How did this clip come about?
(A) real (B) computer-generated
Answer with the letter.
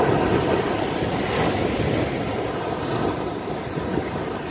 A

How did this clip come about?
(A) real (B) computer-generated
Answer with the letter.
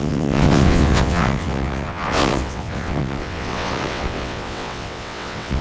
B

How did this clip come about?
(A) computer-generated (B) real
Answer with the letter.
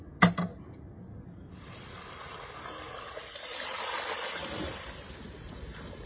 B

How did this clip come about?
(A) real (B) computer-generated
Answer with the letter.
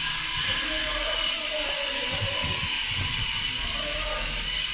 A